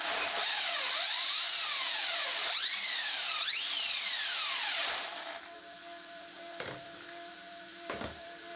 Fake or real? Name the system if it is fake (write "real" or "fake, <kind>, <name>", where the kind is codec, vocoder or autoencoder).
fake, vocoder, BigVGAN v2